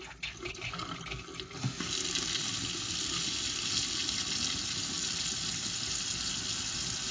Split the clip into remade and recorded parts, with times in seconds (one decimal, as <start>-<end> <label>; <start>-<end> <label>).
0.0-7.1 recorded